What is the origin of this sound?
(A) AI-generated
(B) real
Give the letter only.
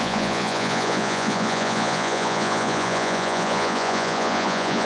A